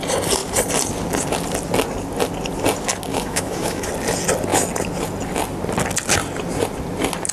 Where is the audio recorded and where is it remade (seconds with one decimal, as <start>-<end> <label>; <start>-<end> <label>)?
0.0-3.1 recorded; 3.1-3.9 remade; 3.9-7.3 recorded